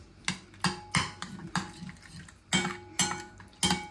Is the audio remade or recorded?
recorded